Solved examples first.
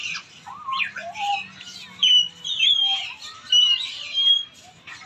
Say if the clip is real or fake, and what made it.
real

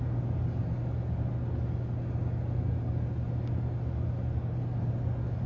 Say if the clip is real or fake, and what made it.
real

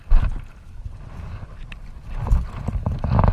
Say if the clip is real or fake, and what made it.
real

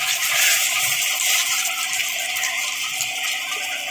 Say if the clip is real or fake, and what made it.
real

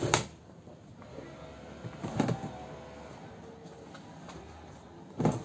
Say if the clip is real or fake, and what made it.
real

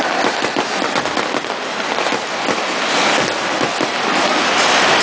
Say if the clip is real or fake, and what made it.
real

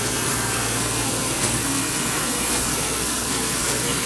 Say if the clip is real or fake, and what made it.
fake, codec, SNAC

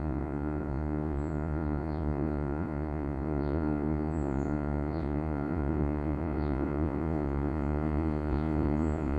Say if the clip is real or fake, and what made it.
fake, vocoder, Vocos